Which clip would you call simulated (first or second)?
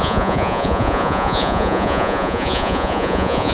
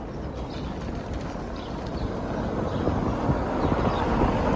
first